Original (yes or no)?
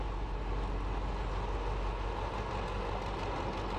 yes